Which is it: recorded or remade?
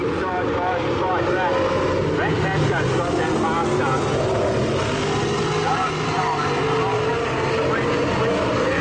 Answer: recorded